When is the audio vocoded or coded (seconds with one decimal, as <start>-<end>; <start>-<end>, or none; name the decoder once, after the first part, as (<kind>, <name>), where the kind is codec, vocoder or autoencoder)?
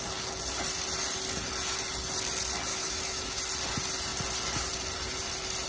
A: 2.7-3.4 (autoencoder, DAC-VAE)